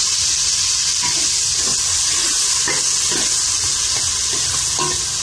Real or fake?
real